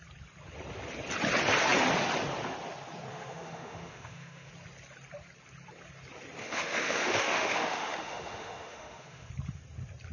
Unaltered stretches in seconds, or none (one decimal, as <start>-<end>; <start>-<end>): 0.0-3.1; 4.5-6.4; 9.3-10.1